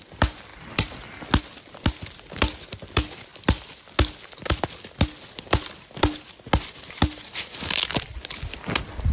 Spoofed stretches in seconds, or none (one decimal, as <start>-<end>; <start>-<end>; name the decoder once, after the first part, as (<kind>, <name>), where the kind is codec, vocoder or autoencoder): none